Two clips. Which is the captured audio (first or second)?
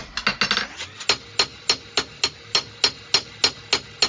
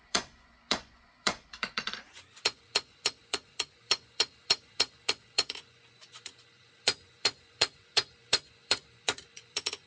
first